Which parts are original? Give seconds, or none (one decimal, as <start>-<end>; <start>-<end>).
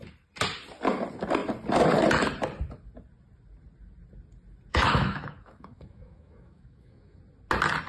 0.0-4.7; 7.2-7.9